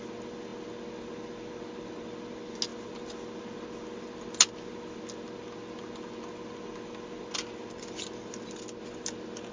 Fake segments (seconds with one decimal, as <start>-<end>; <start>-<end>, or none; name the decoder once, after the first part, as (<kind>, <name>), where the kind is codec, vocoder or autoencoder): none